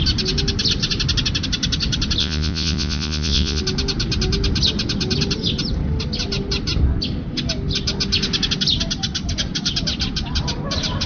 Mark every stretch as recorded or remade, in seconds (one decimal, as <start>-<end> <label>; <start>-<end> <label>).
0.0-2.2 recorded; 2.2-3.6 remade; 3.6-11.1 recorded